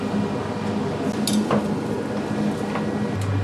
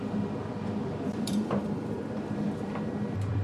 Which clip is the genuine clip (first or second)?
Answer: first